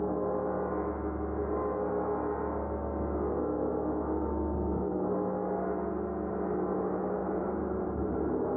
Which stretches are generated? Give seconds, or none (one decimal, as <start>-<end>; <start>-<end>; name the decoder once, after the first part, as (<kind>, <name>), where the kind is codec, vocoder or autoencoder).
7.2-8.6 (vocoder, BigVGAN v2)